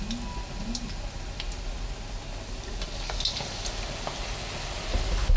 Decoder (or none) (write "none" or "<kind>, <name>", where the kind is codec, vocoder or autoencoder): none